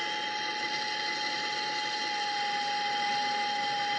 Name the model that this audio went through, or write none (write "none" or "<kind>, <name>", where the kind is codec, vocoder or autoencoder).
none